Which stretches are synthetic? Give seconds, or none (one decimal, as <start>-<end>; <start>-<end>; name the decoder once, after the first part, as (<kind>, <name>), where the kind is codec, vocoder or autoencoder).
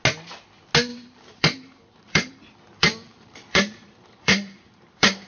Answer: 0.9-2.3 (vocoder, BigVGAN v2); 2.8-5.3